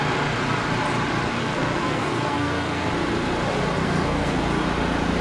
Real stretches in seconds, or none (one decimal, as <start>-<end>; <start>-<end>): 0.0-1.4; 2.9-3.8; 4.4-5.2